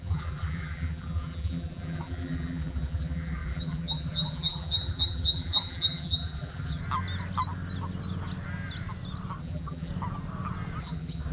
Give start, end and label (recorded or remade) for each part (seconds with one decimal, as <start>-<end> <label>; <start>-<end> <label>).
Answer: 0.0-6.8 remade; 6.8-9.4 recorded; 9.4-9.9 remade; 9.9-10.8 recorded; 10.8-11.3 remade